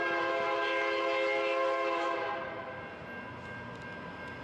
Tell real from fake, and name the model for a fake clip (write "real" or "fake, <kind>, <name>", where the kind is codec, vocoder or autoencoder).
real